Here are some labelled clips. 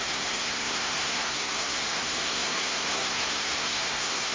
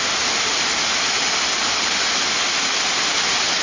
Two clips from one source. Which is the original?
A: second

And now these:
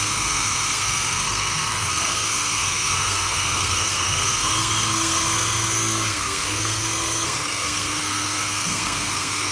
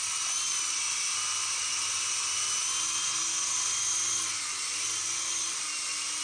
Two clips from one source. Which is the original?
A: second